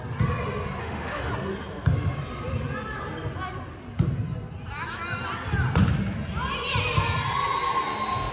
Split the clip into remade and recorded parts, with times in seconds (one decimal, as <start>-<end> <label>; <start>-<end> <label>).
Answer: 0.0-0.8 recorded; 0.8-1.3 remade; 1.3-8.3 recorded